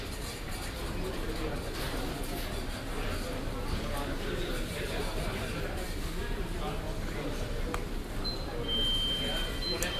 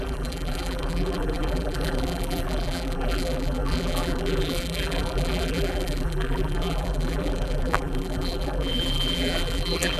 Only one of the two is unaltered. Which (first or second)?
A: first